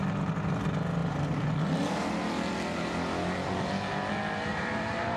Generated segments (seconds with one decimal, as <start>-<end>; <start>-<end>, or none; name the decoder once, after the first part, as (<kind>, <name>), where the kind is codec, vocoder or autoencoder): 4.5-5.2 (vocoder, BigVGAN v2)